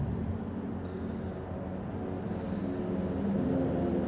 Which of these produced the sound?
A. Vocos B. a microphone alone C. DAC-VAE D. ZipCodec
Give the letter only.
B